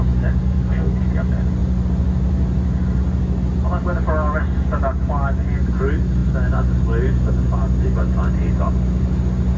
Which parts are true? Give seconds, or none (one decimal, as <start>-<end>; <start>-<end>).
0.0-0.4; 1.0-9.6